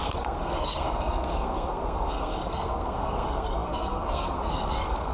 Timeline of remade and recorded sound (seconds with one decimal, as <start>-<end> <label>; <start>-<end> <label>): 0.0-5.1 remade